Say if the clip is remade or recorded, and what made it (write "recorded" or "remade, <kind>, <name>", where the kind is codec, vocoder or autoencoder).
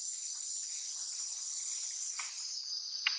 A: recorded